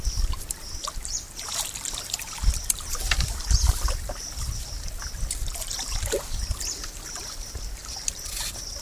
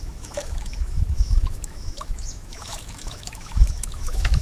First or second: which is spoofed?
second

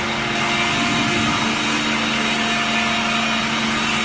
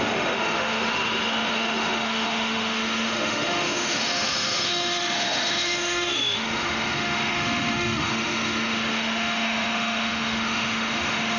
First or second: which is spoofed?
second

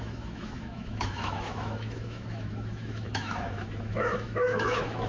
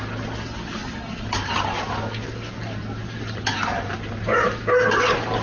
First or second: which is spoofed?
first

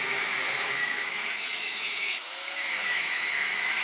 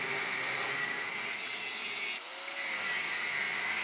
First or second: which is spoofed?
first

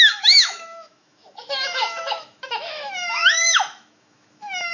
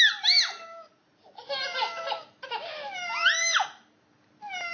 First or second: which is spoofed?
first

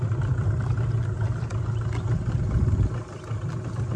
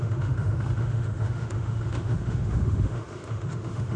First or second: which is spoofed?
second